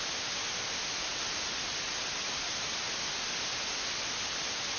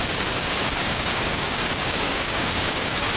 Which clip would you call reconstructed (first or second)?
second